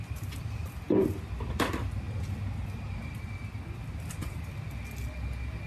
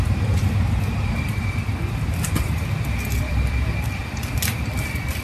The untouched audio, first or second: first